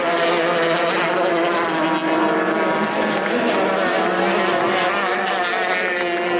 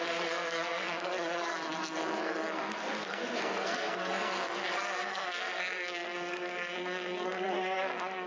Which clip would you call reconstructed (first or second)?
second